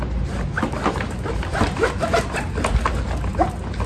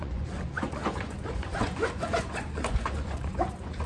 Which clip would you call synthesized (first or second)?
second